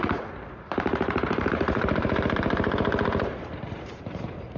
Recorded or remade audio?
remade